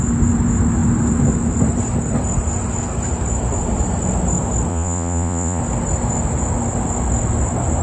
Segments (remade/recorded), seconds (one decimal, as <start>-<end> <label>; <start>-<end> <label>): 0.0-4.7 recorded; 4.7-5.6 remade; 5.6-7.8 recorded

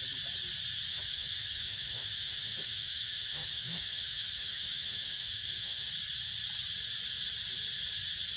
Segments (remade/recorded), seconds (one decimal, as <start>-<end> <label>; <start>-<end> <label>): 0.0-0.9 recorded; 0.9-5.9 remade; 5.9-8.4 recorded

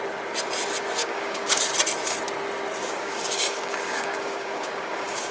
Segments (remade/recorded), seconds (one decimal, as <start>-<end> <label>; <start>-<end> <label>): 0.0-1.0 recorded; 1.0-1.6 remade; 1.6-2.8 recorded; 2.8-5.3 remade

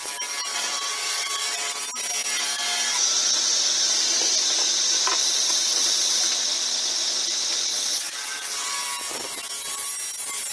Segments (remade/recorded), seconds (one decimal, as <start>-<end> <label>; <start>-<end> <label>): 0.0-0.5 recorded; 0.5-1.8 remade; 1.8-5.2 recorded; 5.2-6.3 remade; 6.3-7.7 recorded; 7.7-8.7 remade; 8.7-10.5 recorded

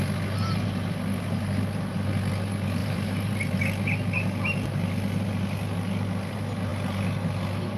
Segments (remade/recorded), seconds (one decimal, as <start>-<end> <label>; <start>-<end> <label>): 0.0-2.8 recorded; 2.8-3.3 remade; 3.3-7.8 recorded

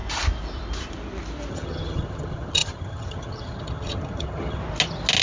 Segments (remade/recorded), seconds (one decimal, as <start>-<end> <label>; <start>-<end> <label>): 0.0-1.5 recorded; 1.5-4.6 remade; 4.6-5.2 recorded